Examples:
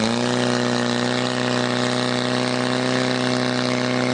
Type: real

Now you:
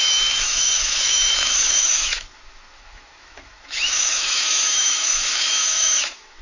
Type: fake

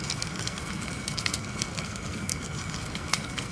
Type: fake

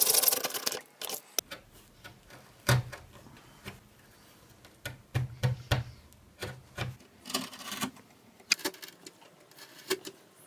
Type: real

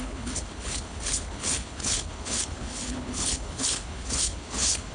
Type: fake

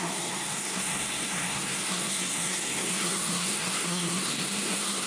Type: fake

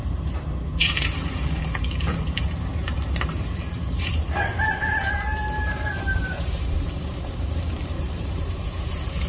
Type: fake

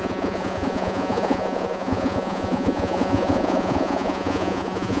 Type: fake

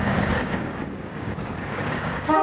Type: fake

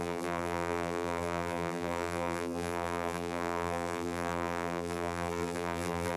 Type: fake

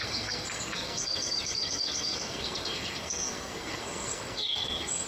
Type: fake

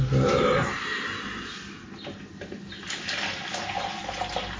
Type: real